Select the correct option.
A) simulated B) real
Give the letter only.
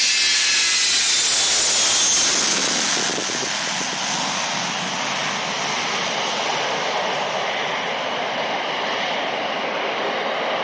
B